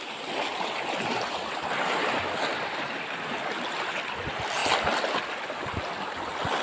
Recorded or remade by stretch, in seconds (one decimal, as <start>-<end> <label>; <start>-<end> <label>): 0.0-6.6 recorded